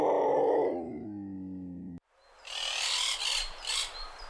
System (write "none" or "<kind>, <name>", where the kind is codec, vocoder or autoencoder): none